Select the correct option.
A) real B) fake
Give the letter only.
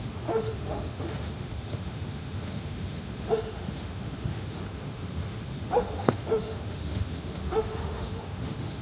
B